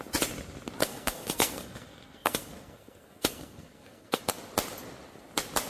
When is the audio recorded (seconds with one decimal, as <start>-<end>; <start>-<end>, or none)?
0.0-0.8; 4.2-5.7